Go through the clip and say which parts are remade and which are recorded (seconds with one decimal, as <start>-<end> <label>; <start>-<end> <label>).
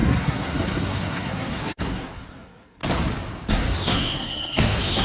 0.0-2.8 remade; 2.8-3.5 recorded; 3.5-5.0 remade